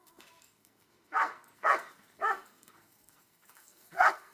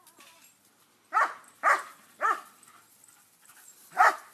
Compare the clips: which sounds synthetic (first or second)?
first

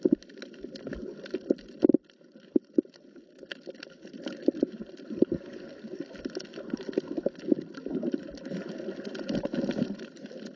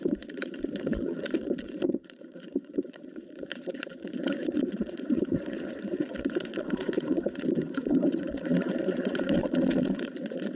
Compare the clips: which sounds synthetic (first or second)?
second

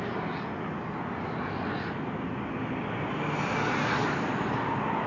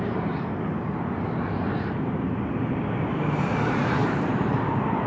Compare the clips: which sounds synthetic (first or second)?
second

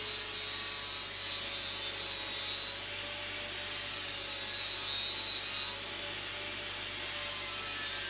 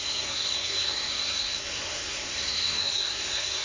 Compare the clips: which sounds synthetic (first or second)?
second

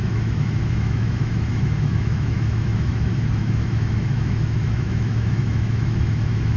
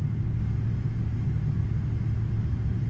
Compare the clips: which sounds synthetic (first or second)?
first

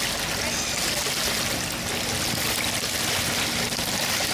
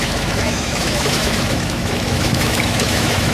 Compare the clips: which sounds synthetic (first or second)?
second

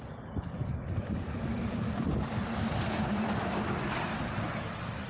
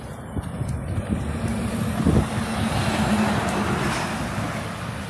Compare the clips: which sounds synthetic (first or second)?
first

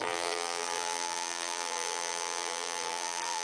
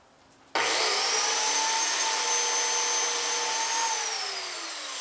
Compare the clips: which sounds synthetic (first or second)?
first